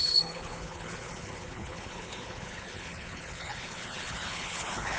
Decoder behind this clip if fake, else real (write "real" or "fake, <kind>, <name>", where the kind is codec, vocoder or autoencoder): fake, codec, HILCodec